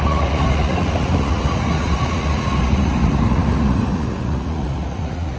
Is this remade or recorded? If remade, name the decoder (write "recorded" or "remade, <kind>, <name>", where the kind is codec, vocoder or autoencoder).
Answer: remade, vocoder, Vocos